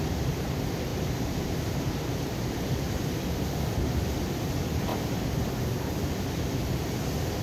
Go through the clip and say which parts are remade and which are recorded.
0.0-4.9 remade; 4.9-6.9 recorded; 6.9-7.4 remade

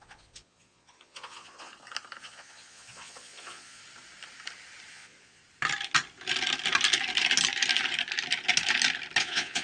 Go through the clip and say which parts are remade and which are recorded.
0.0-1.7 remade; 1.7-2.2 recorded; 2.2-3.8 remade; 3.8-4.9 recorded; 4.9-5.4 remade; 5.4-9.2 recorded; 9.2-9.6 remade

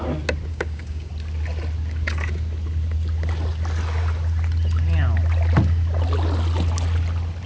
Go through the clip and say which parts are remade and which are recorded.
0.0-0.5 recorded; 0.5-1.1 remade; 1.1-7.5 recorded